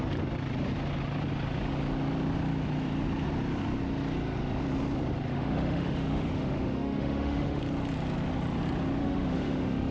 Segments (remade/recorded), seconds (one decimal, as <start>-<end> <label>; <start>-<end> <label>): 0.0-5.3 recorded; 5.3-7.6 remade; 7.6-9.0 recorded; 9.0-9.9 remade